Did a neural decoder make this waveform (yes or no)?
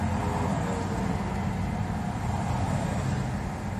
no